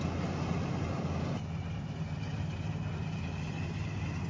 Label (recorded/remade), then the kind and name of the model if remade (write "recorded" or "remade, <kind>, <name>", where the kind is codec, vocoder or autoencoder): recorded